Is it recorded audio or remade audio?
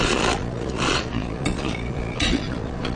remade